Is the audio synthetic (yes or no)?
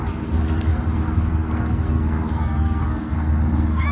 yes